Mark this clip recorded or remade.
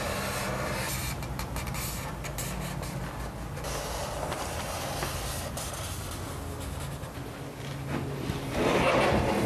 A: recorded